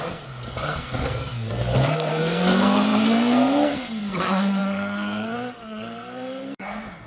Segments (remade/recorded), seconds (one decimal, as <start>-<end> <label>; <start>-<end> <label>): 0.0-7.1 remade